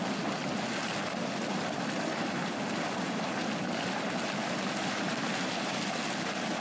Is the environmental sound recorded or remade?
recorded